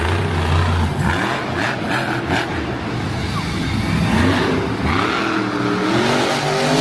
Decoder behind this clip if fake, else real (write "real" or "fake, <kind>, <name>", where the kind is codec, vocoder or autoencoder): real